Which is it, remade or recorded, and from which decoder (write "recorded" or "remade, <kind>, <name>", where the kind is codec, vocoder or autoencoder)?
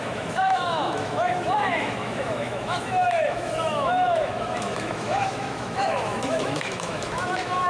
remade, autoencoder, DAC-VAE